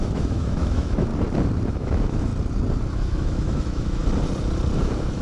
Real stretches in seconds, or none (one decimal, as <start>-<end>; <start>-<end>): 1.1-1.7; 2.3-2.9; 4.0-4.8